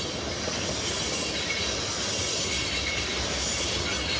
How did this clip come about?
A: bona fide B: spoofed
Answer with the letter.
A